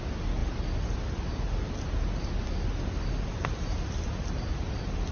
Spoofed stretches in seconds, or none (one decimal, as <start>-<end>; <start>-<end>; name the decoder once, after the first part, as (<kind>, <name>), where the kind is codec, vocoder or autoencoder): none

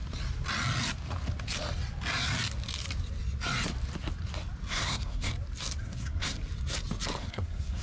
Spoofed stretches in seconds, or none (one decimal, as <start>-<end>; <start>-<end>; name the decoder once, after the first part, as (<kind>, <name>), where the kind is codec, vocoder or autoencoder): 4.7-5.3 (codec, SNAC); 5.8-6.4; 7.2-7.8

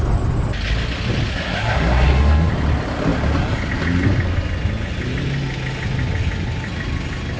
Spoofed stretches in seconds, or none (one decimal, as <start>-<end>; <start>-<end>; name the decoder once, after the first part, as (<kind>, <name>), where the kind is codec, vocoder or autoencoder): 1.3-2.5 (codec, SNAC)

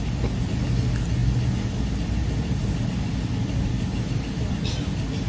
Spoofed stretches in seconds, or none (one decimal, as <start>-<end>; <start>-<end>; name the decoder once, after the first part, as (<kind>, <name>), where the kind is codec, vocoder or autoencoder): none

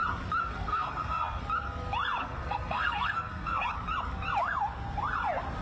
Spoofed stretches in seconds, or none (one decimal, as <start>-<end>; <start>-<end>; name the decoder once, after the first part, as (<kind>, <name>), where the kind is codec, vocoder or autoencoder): 0.4-1.4 (codec, SNAC); 2.2-3.6

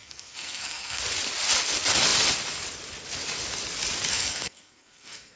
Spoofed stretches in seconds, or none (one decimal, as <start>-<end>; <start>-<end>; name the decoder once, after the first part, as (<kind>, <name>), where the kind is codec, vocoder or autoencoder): 0.0-1.0 (codec, SNAC); 4.1-5.4